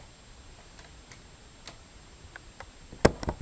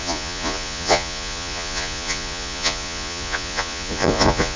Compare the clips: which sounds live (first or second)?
first